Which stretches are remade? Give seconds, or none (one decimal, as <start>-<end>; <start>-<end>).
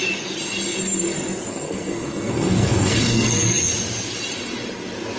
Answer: 1.5-3.7